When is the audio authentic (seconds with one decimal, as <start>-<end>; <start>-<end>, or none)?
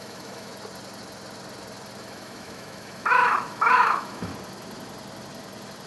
0.5-2.0; 4.3-5.9